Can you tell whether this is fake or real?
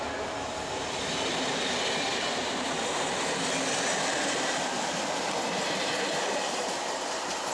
real